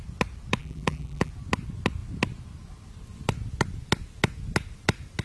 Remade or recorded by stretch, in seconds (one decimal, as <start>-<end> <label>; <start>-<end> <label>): 0.0-0.6 recorded; 0.6-1.3 remade; 1.3-5.2 recorded